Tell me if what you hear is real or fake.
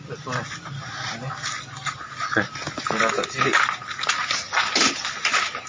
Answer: real